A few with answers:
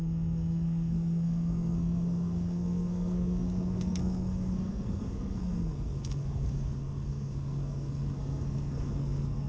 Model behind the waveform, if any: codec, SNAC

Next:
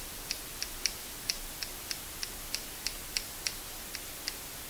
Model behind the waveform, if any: none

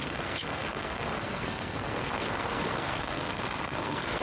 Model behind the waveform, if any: codec, SNAC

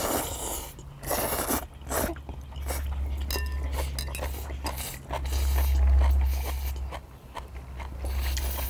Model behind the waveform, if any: none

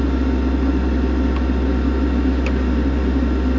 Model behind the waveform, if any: none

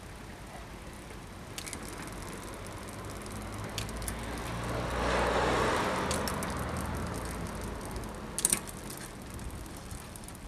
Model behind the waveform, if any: none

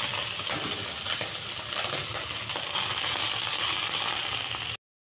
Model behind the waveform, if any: none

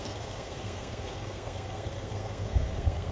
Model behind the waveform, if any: codec, SNAC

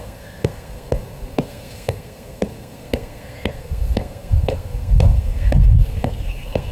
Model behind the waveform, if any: codec, SNAC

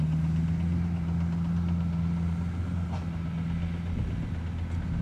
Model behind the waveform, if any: none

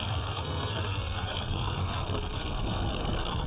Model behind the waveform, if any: codec, SNAC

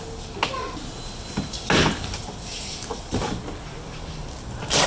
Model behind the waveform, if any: none